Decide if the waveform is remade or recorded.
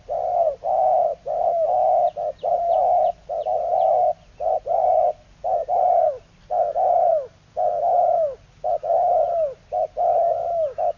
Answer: recorded